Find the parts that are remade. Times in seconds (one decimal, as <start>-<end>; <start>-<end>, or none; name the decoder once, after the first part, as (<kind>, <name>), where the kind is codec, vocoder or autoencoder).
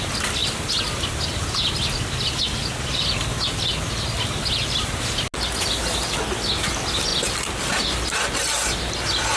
none